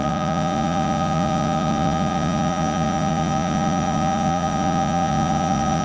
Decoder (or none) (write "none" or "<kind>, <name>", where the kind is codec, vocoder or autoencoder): vocoder, Vocos